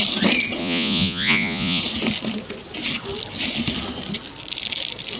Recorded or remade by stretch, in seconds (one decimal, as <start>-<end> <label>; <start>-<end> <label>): 0.0-0.6 recorded; 0.6-1.8 remade; 1.8-5.2 recorded

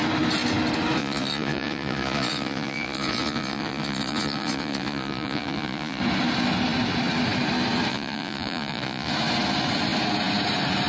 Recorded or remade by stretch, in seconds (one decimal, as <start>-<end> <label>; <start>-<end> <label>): 0.0-1.0 recorded; 1.0-6.0 remade; 6.0-7.9 recorded; 7.9-9.1 remade; 9.1-10.9 recorded

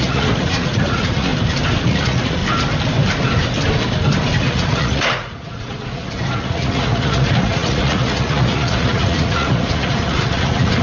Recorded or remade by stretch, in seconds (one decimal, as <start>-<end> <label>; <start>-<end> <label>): 0.0-1.3 remade; 1.3-1.8 recorded; 1.8-2.4 remade; 2.4-4.4 recorded; 4.4-10.8 remade

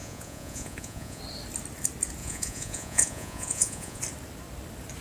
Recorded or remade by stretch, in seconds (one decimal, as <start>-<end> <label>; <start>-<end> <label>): 0.0-1.2 remade; 1.2-2.2 recorded; 2.2-4.0 remade; 4.0-5.0 recorded

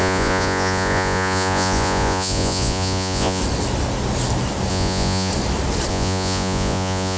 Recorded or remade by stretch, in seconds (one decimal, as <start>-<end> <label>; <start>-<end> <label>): 0.0-3.4 remade; 3.4-4.7 recorded; 4.7-5.3 remade; 5.3-5.9 recorded; 5.9-7.2 remade

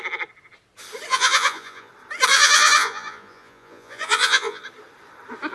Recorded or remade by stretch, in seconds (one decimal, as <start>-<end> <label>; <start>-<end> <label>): 0.0-1.1 recorded; 1.1-1.9 remade; 1.9-2.3 recorded; 2.3-4.6 remade; 4.6-5.5 recorded

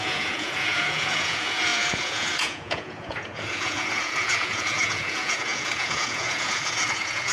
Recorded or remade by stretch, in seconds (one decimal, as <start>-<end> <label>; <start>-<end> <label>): 0.0-7.3 remade